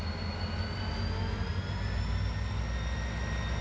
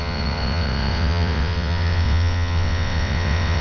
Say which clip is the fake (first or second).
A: second